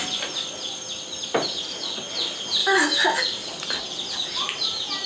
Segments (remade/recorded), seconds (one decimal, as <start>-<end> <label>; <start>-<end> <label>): 0.0-2.6 recorded; 2.6-3.2 remade; 3.2-5.1 recorded